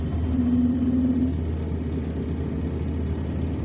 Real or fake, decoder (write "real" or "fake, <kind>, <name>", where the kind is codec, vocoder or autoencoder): real